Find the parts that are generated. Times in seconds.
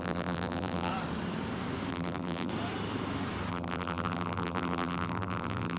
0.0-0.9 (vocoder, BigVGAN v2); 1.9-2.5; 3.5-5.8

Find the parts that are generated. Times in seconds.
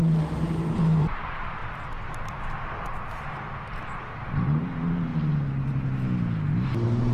0.0-1.6 (vocoder, BigVGAN v2); 2.1-2.9; 3.8-5.1; 6.5-7.1